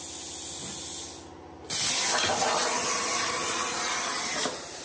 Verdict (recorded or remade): recorded